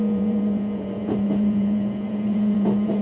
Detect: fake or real fake